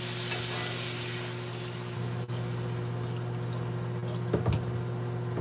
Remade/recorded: recorded